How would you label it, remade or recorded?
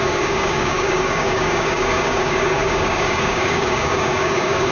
remade